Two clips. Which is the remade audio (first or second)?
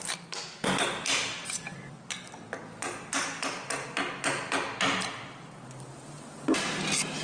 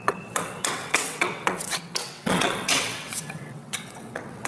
second